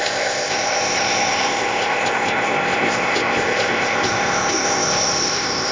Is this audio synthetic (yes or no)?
yes